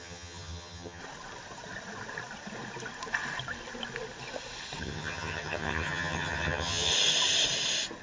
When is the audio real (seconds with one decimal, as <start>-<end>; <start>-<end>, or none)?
1.0-4.8; 6.9-8.0